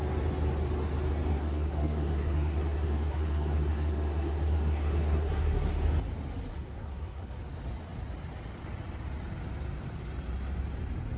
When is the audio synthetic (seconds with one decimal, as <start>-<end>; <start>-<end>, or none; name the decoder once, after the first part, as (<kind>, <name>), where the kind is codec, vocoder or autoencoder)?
1.3-5.8 (codec, SNAC); 6.5-7.4